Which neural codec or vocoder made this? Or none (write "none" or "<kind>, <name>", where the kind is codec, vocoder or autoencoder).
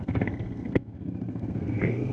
codec, SNAC